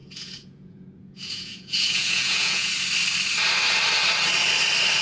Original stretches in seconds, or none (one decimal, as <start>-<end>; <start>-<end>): 2.7-5.0